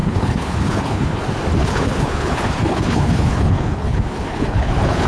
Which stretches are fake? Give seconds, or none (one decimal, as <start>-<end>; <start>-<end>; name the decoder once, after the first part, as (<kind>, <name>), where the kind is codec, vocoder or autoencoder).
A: 0.0-1.2 (codec, HILCodec); 1.6-5.1